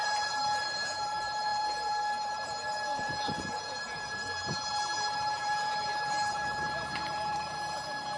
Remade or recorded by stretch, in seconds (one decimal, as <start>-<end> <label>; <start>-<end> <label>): 0.0-8.2 remade